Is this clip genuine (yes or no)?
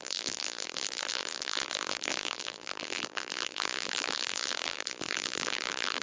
no